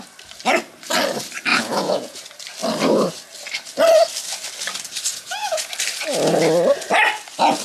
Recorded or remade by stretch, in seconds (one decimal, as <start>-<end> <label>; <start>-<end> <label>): 0.0-1.5 recorded; 1.5-2.2 remade; 2.2-5.1 recorded; 5.1-5.7 remade; 5.7-7.6 recorded

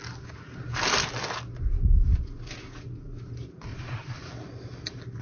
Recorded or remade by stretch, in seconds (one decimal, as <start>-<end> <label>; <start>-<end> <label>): 0.0-3.7 recorded; 3.7-4.3 remade; 4.3-5.2 recorded

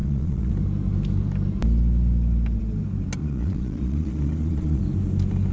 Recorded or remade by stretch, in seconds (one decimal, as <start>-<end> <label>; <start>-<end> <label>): 0.0-0.5 remade; 0.5-3.2 recorded; 3.2-4.8 remade; 4.8-5.5 recorded

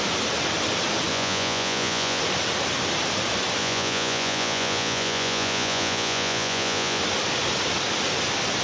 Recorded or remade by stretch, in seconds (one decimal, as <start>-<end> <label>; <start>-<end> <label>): 0.0-1.1 recorded; 1.1-2.2 remade; 2.2-3.6 recorded; 3.6-7.0 remade; 7.0-8.6 recorded

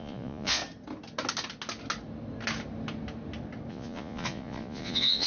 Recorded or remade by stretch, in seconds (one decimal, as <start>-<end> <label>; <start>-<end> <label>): 0.0-0.6 remade; 0.6-3.7 recorded; 3.7-5.3 remade

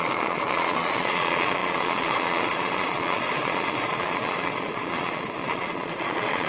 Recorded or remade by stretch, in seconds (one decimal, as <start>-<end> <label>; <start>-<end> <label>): 0.0-6.5 remade

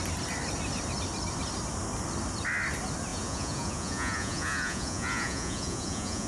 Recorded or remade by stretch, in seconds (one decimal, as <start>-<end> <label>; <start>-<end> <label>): 0.0-3.1 recorded; 3.1-6.3 remade